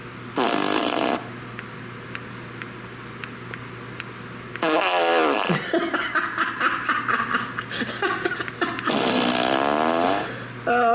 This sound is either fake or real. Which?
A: real